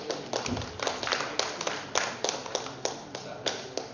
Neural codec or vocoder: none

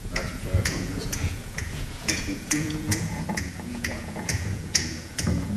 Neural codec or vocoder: vocoder, Vocos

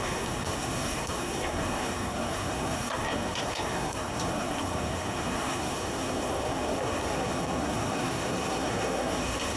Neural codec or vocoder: codec, SNAC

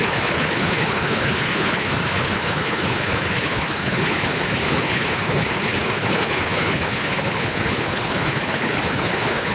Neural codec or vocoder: codec, HILCodec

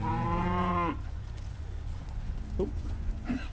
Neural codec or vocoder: vocoder, Vocos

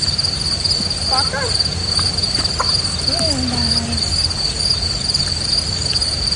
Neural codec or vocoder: none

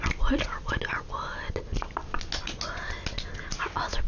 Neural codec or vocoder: none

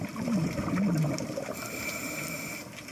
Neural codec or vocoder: none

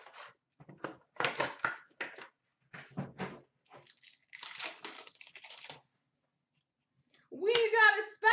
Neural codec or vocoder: none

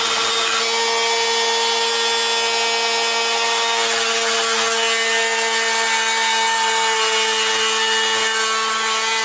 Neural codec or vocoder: none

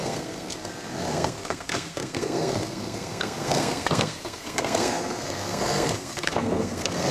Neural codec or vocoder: codec, SNAC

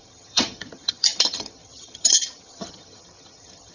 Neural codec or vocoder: vocoder, HiFi-GAN